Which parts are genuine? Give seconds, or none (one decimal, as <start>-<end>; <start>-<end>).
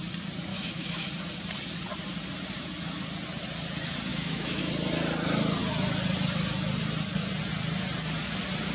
0.0-0.5; 1.1-4.1; 4.6-8.7